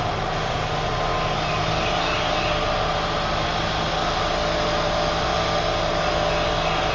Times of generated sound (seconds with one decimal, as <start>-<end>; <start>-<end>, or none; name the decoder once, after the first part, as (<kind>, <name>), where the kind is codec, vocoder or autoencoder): none